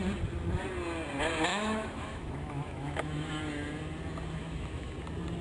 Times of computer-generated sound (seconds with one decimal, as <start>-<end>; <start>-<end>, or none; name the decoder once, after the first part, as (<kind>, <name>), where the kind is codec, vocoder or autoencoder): 1.5-3.3 (autoencoder, DAC-VAE); 4.4-4.9